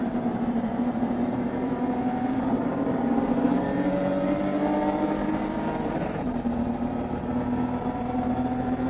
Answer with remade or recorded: remade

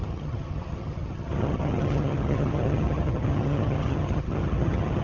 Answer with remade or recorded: remade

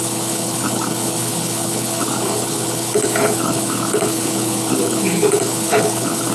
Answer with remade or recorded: remade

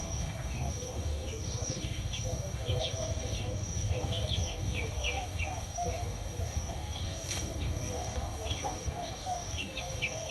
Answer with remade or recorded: remade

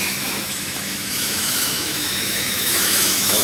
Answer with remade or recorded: remade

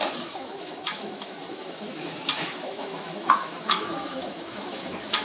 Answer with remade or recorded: remade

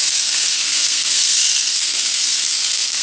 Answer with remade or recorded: remade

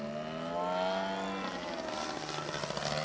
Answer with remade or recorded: recorded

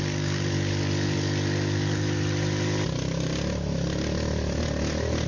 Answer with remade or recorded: recorded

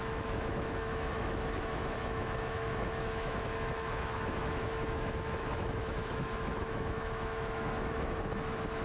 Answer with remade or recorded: remade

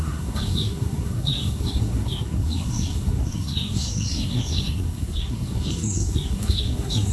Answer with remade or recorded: remade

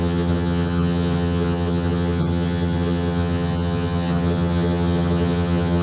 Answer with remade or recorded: remade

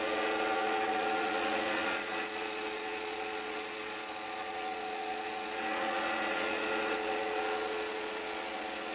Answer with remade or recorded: remade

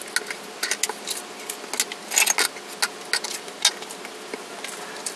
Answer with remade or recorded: recorded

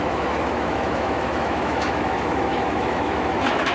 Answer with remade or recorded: remade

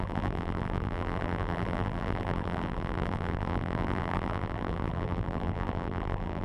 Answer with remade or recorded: remade